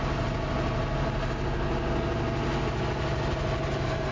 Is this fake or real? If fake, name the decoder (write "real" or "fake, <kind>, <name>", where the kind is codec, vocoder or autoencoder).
real